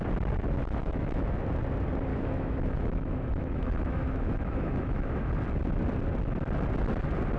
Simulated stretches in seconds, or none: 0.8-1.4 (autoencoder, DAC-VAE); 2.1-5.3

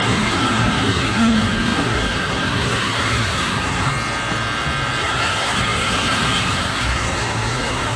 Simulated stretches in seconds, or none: 0.0-3.9 (codec, SNAC); 5.0-8.0

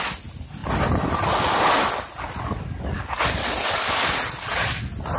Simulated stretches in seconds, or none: none

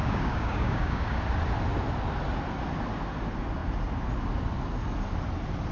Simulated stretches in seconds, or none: 0.0-1.2 (codec, DAC)

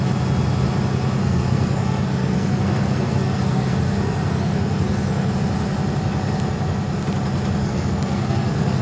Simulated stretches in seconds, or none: 1.2-5.3 (codec, SNAC); 7.6-8.8